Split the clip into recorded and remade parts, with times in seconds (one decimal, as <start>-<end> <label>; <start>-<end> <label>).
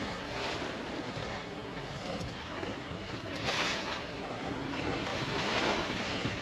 0.0-0.5 remade; 0.5-1.0 recorded; 1.0-6.4 remade